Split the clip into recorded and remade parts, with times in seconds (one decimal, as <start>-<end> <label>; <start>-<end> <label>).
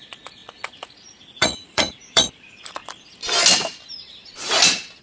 0.0-2.8 remade; 2.8-5.0 recorded